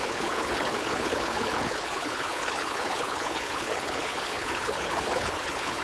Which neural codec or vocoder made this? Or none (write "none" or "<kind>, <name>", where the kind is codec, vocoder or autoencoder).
codec, HILCodec